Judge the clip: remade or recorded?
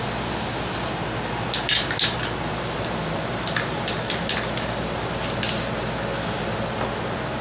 recorded